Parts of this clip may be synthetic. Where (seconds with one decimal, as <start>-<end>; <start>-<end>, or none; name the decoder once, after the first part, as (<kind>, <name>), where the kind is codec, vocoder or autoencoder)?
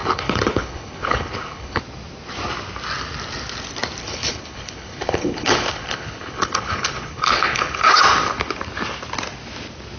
0.0-1.8 (codec, HILCodec); 4.0-7.8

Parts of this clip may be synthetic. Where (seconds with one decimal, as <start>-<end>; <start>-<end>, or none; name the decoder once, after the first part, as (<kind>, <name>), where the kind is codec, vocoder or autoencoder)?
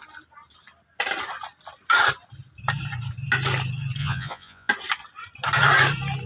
4.0-4.7 (vocoder, Vocos)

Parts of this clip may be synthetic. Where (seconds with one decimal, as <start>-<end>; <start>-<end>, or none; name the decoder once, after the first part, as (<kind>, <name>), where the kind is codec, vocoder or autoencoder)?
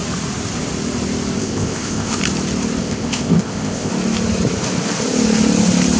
1.4-2.2 (codec, ZipCodec); 2.8-3.9